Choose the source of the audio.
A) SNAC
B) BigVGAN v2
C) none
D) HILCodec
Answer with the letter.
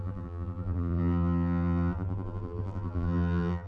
B